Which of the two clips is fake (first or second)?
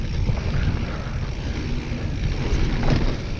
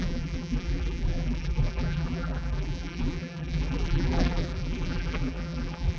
second